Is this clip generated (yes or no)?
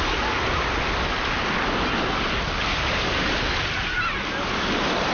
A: no